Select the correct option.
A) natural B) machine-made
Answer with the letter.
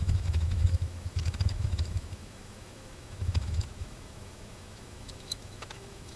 B